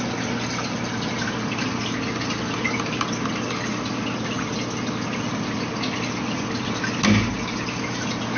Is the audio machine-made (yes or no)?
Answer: no